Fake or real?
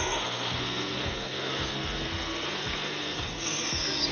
fake